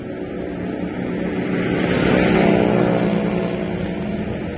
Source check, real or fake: real